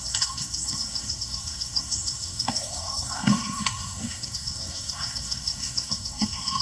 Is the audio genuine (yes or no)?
no